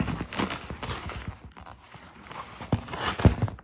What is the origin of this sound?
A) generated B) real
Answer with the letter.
B